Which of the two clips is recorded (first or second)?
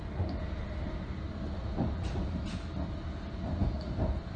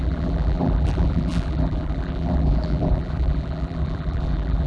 first